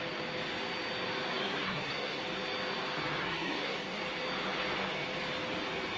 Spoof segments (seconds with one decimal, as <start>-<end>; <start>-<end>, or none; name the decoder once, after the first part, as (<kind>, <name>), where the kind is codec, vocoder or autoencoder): 1.4-2.2 (codec, SNAC); 3.2-4.0